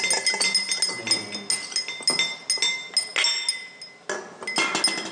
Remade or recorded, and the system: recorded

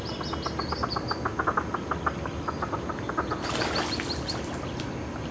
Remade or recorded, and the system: recorded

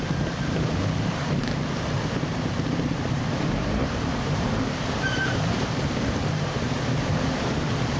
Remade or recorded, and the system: remade, vocoder, BigVGAN v2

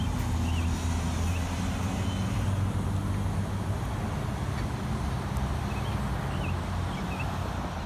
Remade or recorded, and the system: recorded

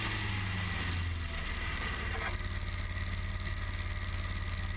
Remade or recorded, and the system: recorded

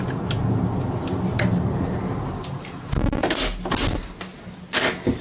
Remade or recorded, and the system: recorded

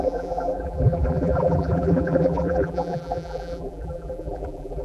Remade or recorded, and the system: remade, vocoder, BigVGAN v2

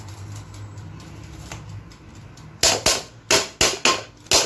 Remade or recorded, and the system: recorded